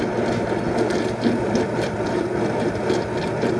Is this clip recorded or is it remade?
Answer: recorded